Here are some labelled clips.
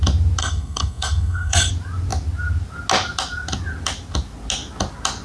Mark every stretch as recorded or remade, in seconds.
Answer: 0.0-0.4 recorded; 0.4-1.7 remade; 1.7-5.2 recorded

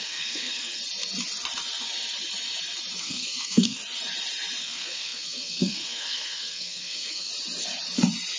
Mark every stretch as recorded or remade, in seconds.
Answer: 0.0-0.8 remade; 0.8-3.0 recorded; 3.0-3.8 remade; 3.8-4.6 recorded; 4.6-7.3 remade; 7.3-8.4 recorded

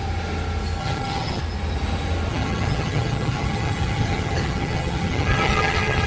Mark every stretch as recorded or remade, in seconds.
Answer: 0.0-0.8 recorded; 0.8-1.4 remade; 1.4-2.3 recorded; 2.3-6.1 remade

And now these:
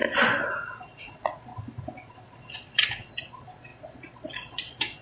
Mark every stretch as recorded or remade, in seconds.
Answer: 0.0-1.0 recorded; 1.0-1.5 remade; 1.5-2.5 recorded; 2.5-5.0 remade